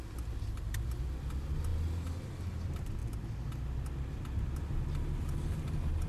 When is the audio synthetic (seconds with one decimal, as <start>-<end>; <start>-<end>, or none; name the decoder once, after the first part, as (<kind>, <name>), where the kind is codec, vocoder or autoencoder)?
none